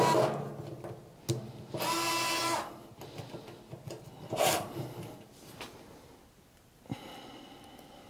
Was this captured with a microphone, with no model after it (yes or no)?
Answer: yes